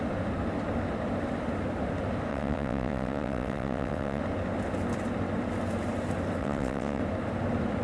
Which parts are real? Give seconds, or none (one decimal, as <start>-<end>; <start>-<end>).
0.0-2.3; 4.2-6.4; 7.0-7.8